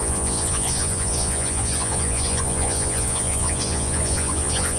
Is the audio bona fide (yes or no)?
no